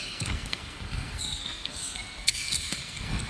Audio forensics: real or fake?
fake